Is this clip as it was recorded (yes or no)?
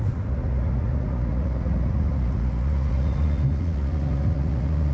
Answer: no